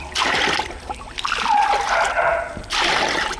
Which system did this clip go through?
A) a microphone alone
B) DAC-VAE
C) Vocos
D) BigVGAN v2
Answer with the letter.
A